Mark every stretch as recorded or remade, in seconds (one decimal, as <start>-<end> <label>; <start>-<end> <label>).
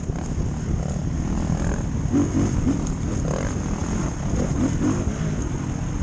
0.0-6.0 recorded